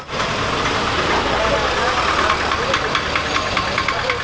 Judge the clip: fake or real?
real